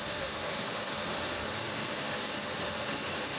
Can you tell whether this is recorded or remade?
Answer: remade